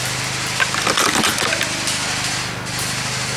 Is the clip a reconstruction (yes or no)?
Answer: no